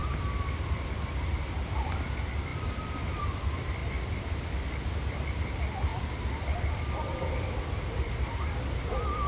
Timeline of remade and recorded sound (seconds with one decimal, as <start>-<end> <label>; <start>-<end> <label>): 0.0-1.7 remade; 1.7-2.5 recorded; 2.5-3.2 remade; 3.2-3.8 recorded; 3.8-4.4 remade; 4.4-5.9 recorded; 5.9-8.7 remade; 8.7-9.3 recorded